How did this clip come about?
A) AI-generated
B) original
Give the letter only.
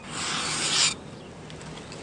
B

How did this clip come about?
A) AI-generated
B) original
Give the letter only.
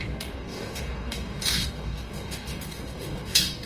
A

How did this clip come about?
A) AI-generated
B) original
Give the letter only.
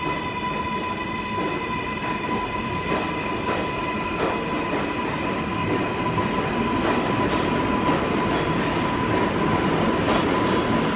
B